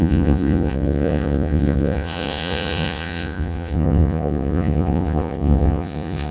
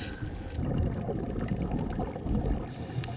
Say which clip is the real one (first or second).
second